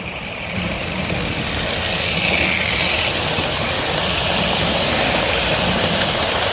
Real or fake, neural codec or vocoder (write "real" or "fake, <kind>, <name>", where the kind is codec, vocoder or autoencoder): real